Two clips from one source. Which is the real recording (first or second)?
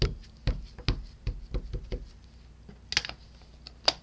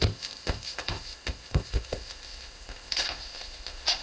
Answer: first